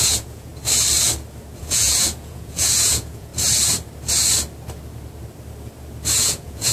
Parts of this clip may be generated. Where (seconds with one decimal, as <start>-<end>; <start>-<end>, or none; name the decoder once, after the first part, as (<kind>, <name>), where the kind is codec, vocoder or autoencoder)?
0.0-0.5 (vocoder, Vocos); 1.6-3.3; 6.2-6.7